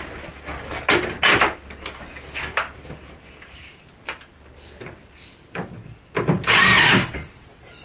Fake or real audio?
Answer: real